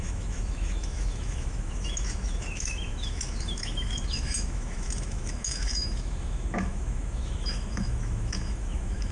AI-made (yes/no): yes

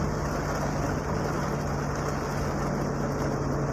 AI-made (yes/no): no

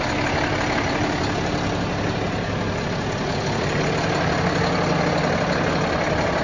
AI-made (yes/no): no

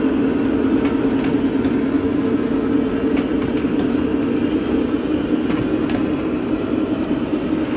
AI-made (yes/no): no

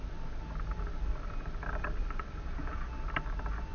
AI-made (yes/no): no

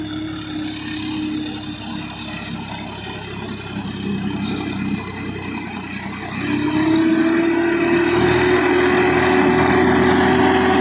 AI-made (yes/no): no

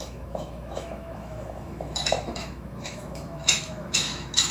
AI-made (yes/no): yes